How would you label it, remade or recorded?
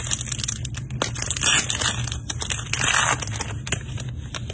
recorded